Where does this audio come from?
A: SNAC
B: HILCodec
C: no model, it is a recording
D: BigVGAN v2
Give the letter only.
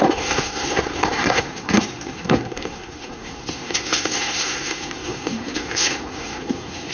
A